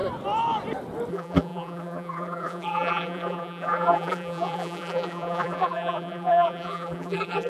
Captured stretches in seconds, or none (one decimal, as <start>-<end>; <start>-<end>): 0.0-1.1